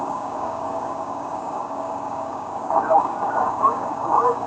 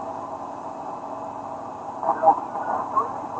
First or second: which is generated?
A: first